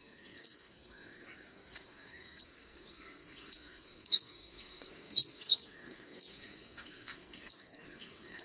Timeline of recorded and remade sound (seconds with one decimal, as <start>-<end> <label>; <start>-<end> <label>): 0.0-8.4 remade